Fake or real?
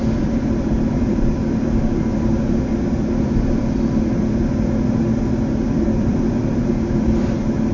fake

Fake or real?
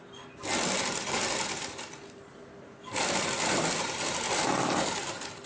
real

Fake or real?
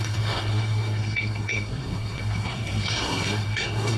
fake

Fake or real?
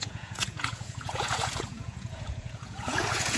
fake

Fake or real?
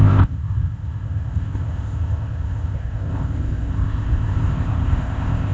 fake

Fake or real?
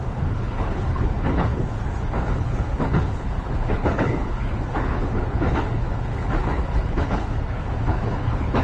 fake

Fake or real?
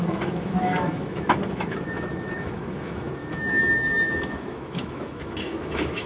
fake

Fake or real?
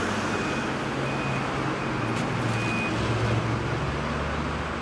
real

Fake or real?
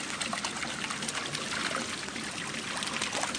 real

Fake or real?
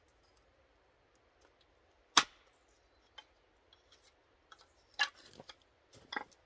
real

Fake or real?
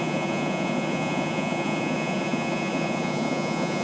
fake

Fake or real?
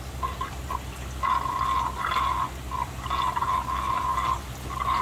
real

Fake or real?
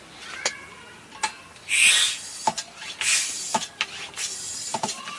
real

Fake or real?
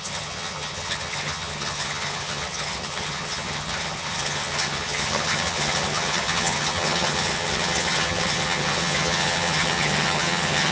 fake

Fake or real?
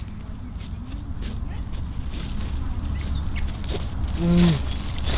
real